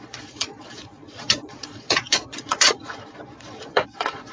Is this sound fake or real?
fake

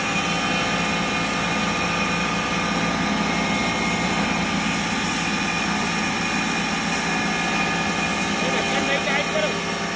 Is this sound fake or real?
real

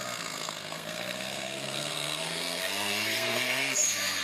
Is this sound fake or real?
fake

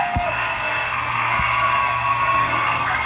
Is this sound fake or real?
fake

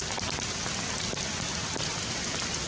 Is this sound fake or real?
real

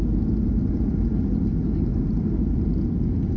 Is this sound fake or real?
real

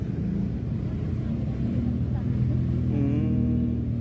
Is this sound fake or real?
real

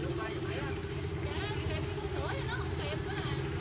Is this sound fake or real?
real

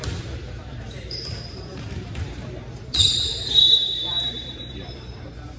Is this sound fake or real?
fake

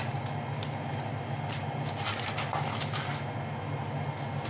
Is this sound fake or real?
real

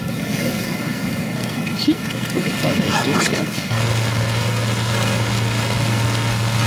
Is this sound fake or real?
fake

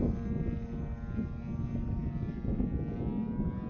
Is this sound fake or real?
real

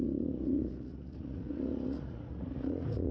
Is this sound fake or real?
fake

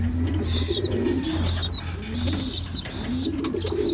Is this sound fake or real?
real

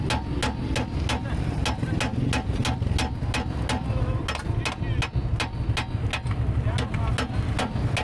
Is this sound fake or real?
real